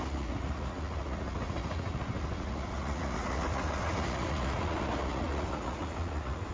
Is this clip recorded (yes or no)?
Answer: no